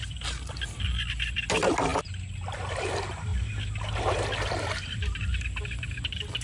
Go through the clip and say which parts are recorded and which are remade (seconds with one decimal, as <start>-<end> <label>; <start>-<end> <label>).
0.0-6.4 recorded